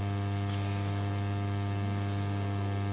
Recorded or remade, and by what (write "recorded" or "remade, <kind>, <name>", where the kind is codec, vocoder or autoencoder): recorded